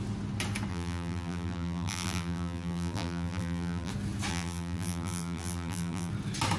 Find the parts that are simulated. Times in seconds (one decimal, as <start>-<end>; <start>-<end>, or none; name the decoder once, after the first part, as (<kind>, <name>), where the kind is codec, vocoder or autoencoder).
0.7-3.9 (vocoder, BigVGAN v2); 4.3-6.1